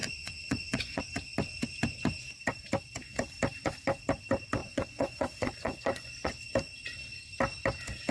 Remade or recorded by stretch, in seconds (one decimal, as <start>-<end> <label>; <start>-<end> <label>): 0.0-1.0 remade; 1.0-4.6 recorded; 4.6-6.5 remade; 6.5-8.1 recorded